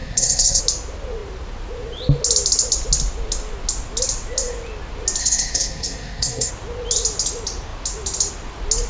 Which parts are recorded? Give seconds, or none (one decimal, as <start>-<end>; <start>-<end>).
0.6-5.2; 6.5-8.9